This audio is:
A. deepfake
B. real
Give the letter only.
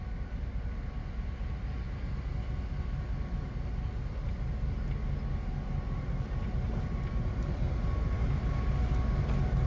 B